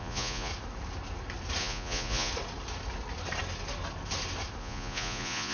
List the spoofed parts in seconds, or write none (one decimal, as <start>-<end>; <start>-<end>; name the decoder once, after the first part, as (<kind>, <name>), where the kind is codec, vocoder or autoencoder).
0.0-0.5 (vocoder, Vocos); 1.6-2.3; 4.6-5.5